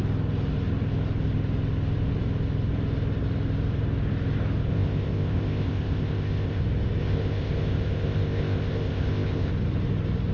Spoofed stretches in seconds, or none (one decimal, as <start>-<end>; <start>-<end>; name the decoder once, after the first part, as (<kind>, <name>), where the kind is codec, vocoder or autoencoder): 4.7-6.6 (codec, ZipCodec); 7.0-9.5